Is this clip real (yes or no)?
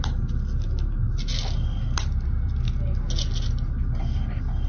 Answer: yes